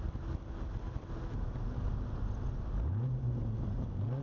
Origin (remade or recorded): recorded